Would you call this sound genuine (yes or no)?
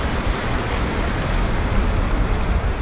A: yes